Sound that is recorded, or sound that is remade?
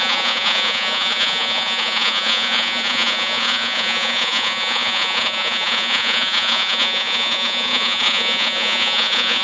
remade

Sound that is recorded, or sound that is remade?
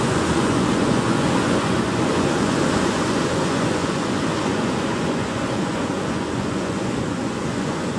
remade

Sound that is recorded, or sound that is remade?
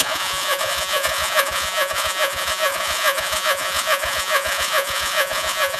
remade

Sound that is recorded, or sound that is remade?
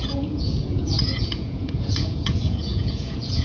remade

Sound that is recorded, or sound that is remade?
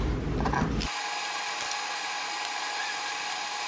recorded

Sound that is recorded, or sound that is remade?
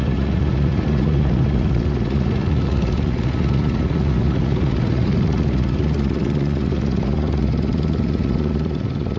remade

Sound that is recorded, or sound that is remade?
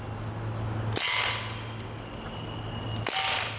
recorded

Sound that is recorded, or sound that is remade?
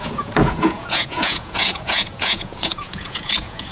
remade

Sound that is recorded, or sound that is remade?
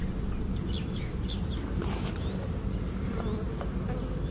recorded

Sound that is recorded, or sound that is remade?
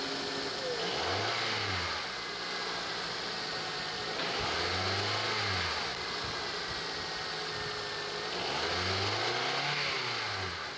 recorded